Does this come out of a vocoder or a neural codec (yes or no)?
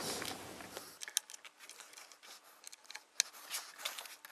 no